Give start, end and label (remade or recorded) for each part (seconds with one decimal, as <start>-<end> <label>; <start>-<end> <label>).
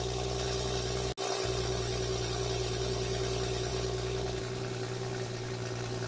0.0-6.1 recorded